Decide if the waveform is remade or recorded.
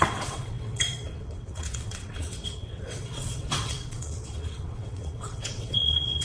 remade